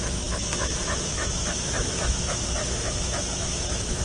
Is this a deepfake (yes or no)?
yes